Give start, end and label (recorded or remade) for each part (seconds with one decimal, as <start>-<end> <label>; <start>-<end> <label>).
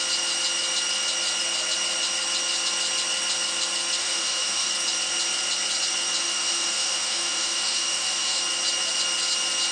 0.0-4.0 recorded; 4.0-4.7 remade; 4.7-6.2 recorded; 6.2-8.4 remade; 8.4-9.7 recorded